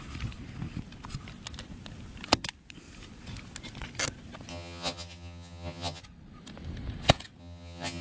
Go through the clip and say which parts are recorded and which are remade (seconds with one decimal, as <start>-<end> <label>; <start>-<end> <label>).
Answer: 0.0-4.5 recorded; 4.5-6.0 remade; 6.0-7.4 recorded; 7.4-8.0 remade